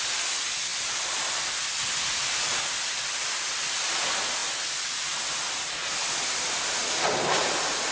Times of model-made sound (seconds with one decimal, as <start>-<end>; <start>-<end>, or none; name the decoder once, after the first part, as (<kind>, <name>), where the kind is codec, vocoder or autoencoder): none